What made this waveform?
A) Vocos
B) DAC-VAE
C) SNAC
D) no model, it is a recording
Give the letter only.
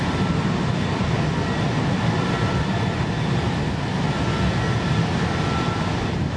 D